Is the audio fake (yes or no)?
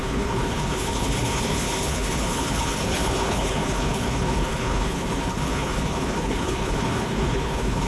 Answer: yes